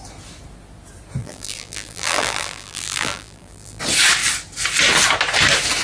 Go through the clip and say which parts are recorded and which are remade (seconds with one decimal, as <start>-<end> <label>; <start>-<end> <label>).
0.0-1.2 recorded; 1.2-3.8 remade; 3.8-5.8 recorded